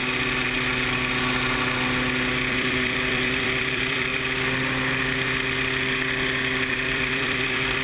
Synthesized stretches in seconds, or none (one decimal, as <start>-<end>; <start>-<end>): 2.5-4.1; 6.7-7.8